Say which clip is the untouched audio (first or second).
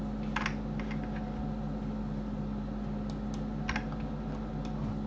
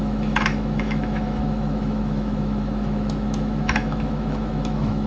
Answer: first